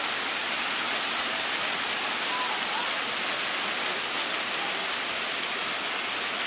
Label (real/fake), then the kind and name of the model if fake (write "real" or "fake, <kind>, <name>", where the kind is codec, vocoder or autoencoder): real